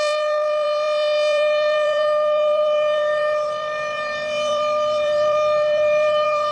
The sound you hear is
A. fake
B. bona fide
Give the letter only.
A